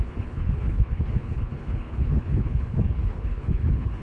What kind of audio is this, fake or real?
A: fake